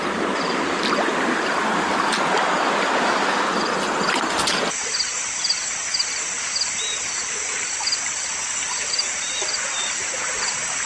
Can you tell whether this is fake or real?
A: real